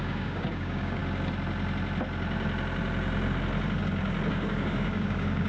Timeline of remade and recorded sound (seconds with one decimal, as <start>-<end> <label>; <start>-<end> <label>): 0.0-1.0 remade; 1.0-4.3 recorded; 4.3-5.5 remade